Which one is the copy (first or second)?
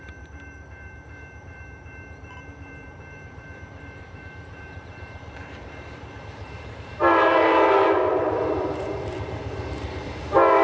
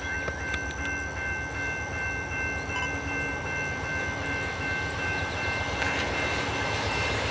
first